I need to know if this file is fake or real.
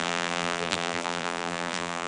fake